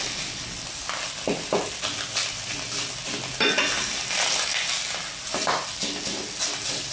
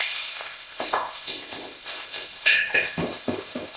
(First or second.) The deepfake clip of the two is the second